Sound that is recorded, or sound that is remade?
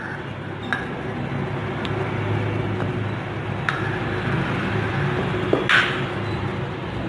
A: recorded